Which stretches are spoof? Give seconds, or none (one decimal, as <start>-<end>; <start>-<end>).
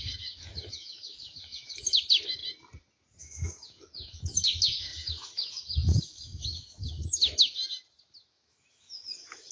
0.0-2.4; 3.2-7.6; 8.3-9.5